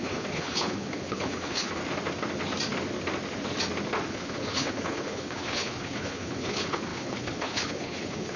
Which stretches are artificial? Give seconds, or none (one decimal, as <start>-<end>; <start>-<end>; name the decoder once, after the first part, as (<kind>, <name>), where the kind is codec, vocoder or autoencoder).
0.0-1.8 (codec, HILCodec); 4.1-8.4